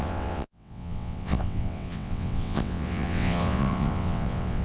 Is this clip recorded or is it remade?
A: remade